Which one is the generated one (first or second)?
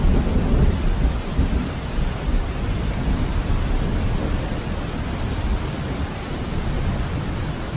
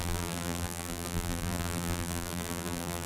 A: second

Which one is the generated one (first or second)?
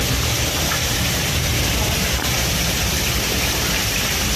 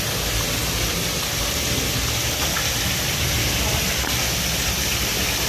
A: first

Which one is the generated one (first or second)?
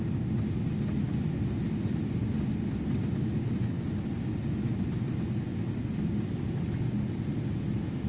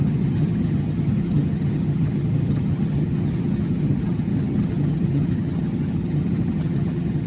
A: second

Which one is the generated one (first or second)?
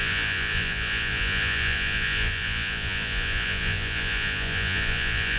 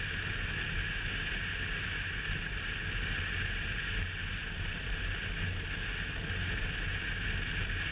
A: first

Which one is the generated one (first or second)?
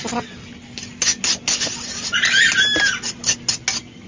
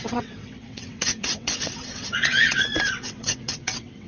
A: second